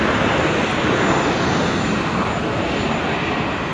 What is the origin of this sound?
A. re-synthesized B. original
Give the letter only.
B